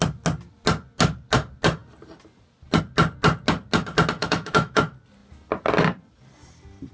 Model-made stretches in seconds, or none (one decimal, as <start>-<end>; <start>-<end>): 4.2-4.8